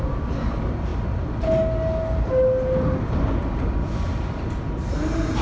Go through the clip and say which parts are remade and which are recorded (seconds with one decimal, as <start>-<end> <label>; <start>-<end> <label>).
0.0-5.4 recorded